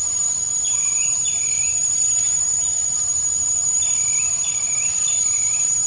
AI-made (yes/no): no